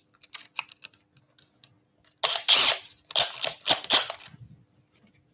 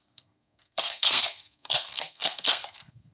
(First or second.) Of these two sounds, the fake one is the second